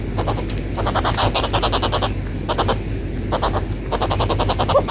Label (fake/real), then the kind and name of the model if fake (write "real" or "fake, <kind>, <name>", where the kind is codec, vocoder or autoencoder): real